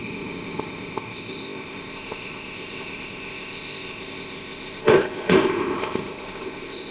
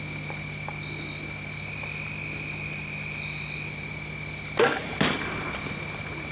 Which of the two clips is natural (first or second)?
second